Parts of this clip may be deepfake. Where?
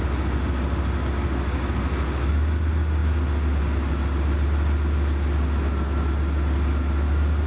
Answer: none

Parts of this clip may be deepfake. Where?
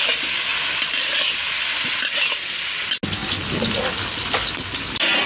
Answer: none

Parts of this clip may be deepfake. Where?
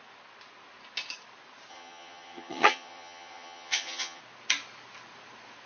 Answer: 1.7-4.2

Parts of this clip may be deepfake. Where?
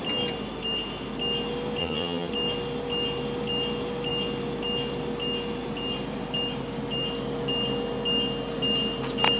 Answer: 1.8-2.3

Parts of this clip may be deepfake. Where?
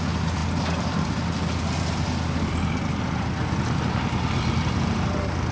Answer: none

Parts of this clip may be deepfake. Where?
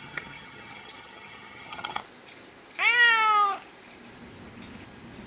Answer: 0.0-2.0